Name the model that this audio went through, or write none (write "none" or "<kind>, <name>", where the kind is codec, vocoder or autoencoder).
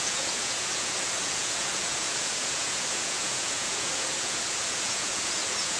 vocoder, Vocos